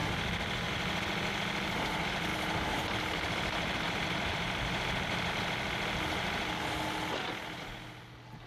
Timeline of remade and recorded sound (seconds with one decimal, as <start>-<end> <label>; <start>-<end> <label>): 0.0-2.3 recorded; 2.3-5.3 remade; 5.3-8.5 recorded